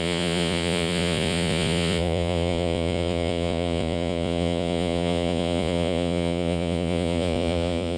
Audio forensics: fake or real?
fake